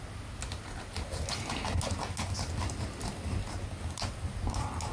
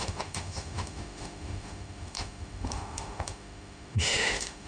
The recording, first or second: first